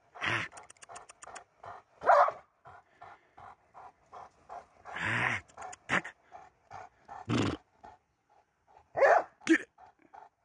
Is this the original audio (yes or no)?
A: yes